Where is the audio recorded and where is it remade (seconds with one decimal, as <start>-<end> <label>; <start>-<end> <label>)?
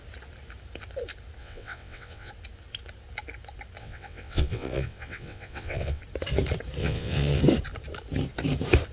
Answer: 0.0-1.4 recorded; 1.4-2.3 remade; 2.3-3.8 recorded; 3.8-6.0 remade; 6.0-6.8 recorded; 6.8-7.4 remade; 7.4-8.9 recorded